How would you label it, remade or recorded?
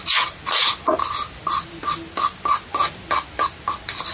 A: recorded